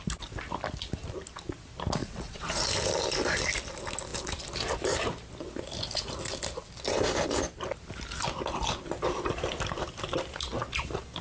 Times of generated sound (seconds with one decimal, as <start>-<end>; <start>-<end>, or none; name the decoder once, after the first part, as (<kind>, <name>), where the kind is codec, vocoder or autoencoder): 2.0-2.6 (vocoder, Vocos)